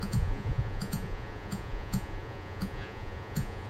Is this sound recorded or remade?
remade